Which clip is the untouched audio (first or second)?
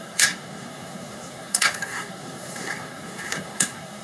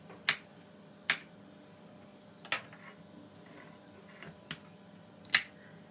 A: second